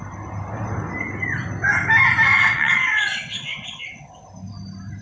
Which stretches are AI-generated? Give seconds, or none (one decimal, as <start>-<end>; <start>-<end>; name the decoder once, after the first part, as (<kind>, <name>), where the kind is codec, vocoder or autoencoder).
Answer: 2.3-4.1 (vocoder, WaveNeXt)